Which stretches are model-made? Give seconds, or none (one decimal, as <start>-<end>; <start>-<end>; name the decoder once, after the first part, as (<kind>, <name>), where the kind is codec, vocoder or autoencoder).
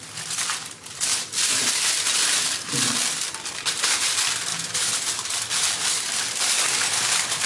0.0-1.1 (vocoder, BigVGAN v2); 1.7-7.5